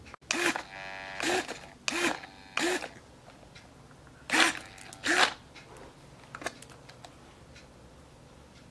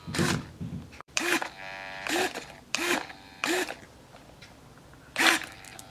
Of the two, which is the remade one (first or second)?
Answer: second